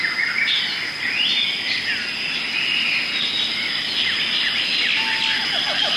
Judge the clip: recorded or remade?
recorded